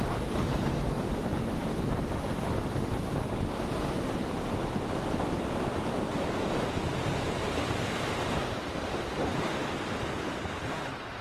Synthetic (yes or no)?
yes